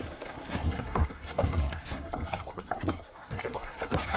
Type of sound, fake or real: fake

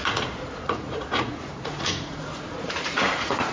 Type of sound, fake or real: fake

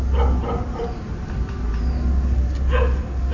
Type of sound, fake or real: real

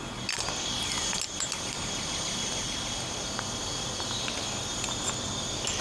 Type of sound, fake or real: real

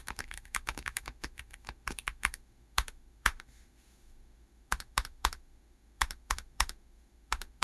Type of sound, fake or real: fake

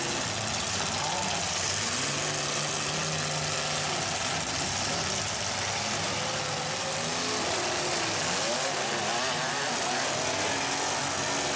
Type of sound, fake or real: real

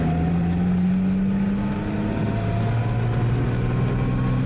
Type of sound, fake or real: real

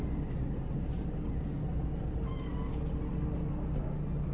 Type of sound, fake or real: real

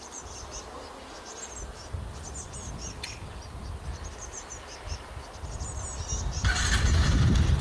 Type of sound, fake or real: real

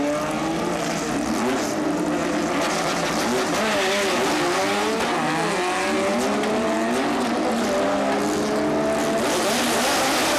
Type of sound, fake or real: real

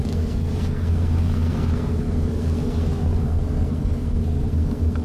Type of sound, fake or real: fake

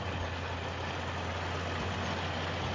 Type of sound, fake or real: real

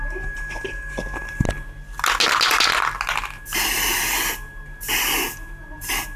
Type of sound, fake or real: real